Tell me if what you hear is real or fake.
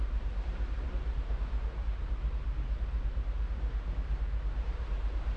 fake